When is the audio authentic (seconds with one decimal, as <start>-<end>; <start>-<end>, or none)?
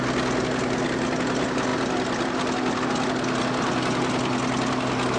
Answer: 0.0-5.2